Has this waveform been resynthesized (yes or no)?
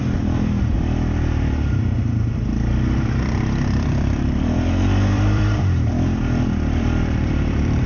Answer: yes